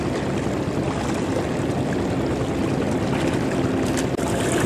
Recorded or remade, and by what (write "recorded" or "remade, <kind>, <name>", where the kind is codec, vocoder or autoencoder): recorded